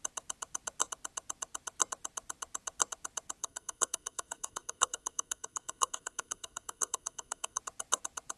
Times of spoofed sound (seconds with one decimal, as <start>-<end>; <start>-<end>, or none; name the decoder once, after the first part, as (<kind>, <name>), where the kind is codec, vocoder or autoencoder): 3.4-7.6 (codec, SNAC)